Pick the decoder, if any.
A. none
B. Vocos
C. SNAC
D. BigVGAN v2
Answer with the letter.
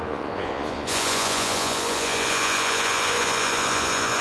B